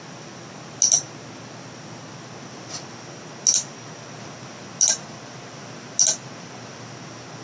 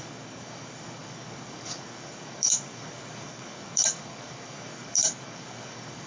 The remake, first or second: second